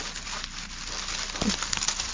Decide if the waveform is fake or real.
real